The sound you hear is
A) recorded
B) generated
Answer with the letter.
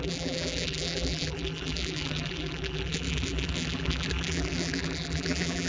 B